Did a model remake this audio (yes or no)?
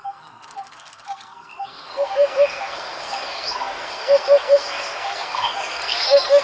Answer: yes